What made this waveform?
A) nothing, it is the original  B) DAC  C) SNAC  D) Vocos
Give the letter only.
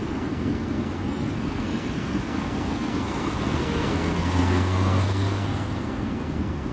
C